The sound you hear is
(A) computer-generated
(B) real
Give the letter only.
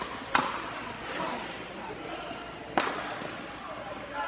B